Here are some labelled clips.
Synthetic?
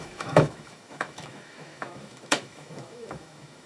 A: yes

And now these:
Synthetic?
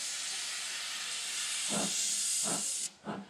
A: no